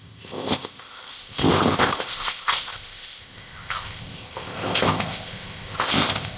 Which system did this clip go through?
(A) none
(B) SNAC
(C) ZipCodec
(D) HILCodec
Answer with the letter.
C